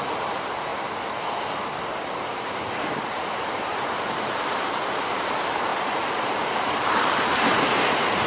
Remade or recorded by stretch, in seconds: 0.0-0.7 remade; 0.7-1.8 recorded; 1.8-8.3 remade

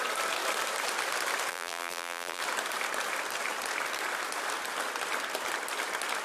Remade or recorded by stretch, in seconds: 0.0-1.5 recorded; 1.5-2.4 remade; 2.4-6.2 recorded

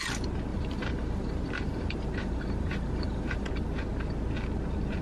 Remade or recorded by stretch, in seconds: 0.0-0.5 recorded; 0.5-3.5 remade; 3.5-5.0 recorded

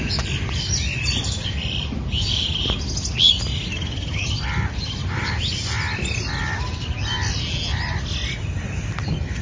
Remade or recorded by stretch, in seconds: 0.0-5.0 recorded; 5.0-5.7 remade; 5.7-9.4 recorded

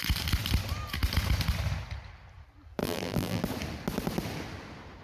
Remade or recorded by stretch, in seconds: 0.0-2.8 recorded; 2.8-3.4 remade; 3.4-5.0 recorded